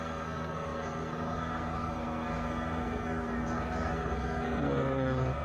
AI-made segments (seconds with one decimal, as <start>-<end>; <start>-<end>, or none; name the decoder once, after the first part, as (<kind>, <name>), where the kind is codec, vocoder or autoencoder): 0.0-5.4 (codec, SNAC)